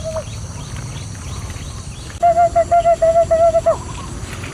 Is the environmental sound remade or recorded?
recorded